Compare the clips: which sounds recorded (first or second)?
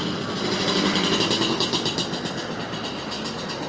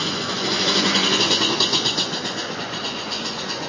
first